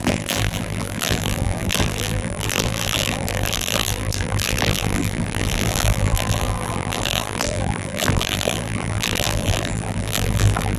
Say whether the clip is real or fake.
fake